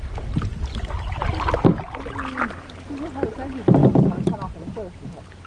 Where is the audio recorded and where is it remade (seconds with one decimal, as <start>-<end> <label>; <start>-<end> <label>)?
0.0-5.5 recorded